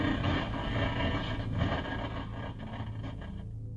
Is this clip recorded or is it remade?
recorded